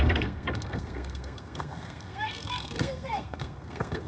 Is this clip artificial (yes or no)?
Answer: yes